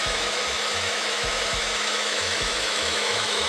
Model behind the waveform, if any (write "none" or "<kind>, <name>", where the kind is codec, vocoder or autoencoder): autoencoder, DAC-VAE